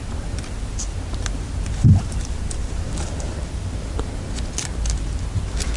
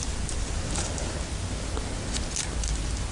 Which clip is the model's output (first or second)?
first